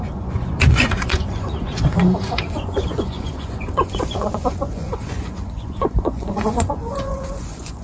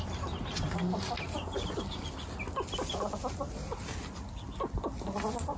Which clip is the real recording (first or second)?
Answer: second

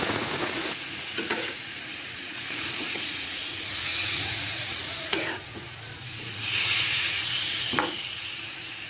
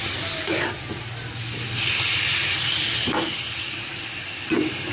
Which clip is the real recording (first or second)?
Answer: second